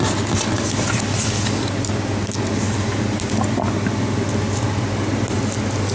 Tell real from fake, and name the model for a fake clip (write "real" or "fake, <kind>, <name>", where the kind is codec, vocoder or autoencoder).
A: real